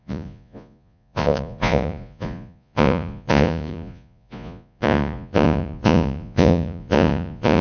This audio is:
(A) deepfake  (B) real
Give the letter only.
A